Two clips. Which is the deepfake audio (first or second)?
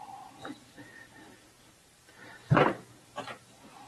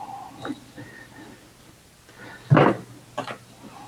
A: first